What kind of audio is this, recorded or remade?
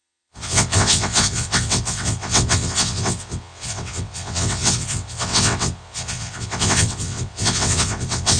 remade